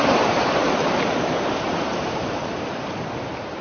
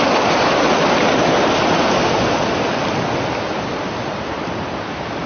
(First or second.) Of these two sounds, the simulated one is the first